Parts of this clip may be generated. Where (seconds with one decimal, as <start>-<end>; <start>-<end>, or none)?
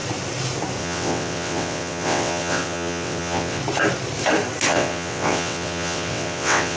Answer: 0.8-3.6; 4.7-6.8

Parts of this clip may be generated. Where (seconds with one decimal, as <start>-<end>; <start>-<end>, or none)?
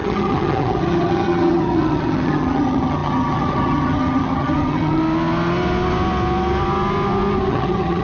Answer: 0.0-5.0; 7.5-8.0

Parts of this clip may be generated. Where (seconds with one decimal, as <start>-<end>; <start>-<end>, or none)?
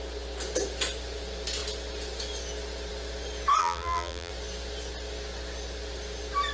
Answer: 3.6-4.3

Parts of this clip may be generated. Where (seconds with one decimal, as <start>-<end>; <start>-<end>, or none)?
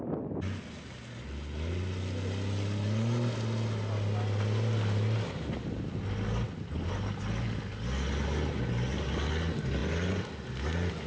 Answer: none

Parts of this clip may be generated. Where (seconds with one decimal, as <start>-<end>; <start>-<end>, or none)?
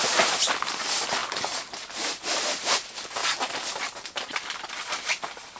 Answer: 0.0-1.2; 2.0-5.6